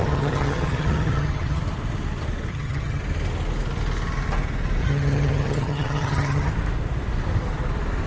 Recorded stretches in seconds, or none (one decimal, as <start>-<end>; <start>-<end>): 1.6-2.5; 3.0-4.8; 6.5-8.1